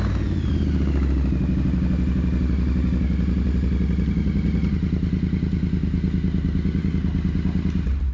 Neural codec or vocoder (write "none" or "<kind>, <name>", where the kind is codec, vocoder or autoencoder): none